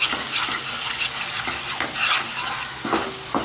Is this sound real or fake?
real